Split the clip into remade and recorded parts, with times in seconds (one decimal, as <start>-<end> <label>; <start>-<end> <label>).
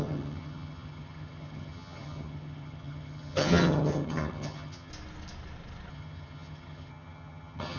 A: 0.0-4.9 remade; 4.9-5.9 recorded; 5.9-7.8 remade